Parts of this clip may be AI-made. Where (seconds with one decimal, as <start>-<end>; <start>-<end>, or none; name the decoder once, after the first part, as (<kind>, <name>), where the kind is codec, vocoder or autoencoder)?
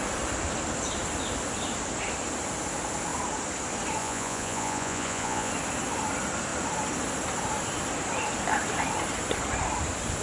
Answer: 4.0-5.5 (vocoder, Vocos)